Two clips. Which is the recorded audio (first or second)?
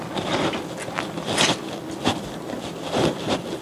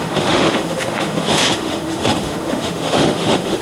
first